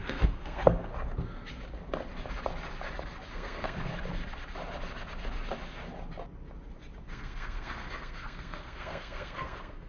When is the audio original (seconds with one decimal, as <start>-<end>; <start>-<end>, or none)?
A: 0.9-3.3; 3.9-7.1